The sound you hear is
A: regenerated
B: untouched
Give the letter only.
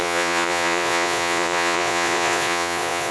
A